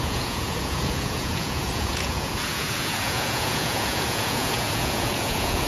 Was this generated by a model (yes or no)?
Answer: yes